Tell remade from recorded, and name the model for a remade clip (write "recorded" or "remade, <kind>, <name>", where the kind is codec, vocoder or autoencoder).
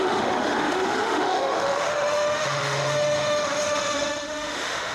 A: remade, autoencoder, DAC-VAE